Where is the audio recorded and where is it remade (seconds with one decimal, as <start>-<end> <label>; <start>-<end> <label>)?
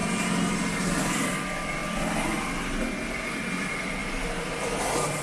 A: 0.0-0.8 recorded; 0.8-1.8 remade; 1.8-3.3 recorded; 3.3-4.0 remade; 4.0-4.6 recorded; 4.6-5.2 remade